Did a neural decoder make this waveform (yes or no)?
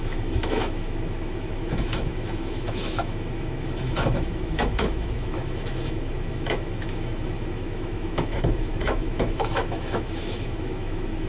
yes